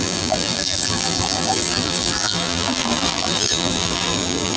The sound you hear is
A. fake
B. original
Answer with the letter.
A